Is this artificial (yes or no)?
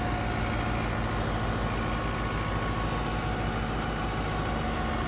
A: no